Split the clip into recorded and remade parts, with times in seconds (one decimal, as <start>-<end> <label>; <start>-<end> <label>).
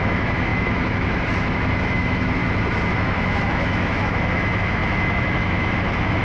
0.0-2.4 remade; 2.4-2.9 recorded; 2.9-6.2 remade